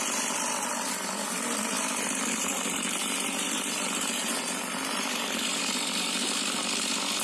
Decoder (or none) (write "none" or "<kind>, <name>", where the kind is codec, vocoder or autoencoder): none